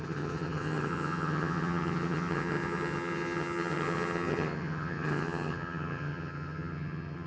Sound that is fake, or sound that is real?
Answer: fake